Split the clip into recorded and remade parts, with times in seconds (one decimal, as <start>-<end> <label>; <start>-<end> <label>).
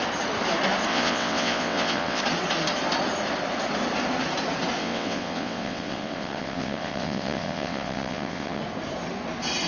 0.0-0.9 recorded; 0.9-2.2 remade; 2.2-4.8 recorded; 4.8-8.6 remade; 8.6-9.7 recorded